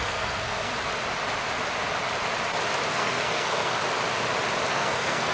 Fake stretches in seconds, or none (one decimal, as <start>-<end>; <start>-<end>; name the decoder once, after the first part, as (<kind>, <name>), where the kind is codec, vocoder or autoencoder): 0.0-0.7 (codec, SNAC); 2.9-3.8; 4.7-5.3